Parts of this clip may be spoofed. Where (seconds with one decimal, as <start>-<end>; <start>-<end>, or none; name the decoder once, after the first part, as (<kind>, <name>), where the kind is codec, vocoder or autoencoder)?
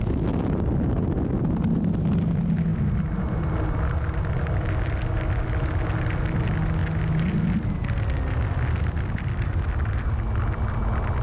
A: none